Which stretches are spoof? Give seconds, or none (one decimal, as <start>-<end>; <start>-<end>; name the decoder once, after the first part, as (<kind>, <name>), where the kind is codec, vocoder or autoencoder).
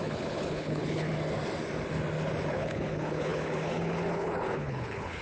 0.0-1.1 (codec, HILCodec); 2.5-5.2